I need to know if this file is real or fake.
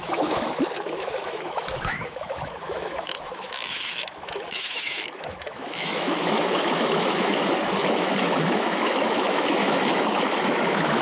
fake